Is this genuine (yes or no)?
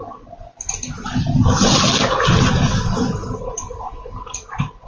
yes